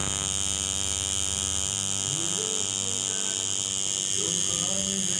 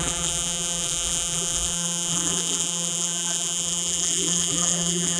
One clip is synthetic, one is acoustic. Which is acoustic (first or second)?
first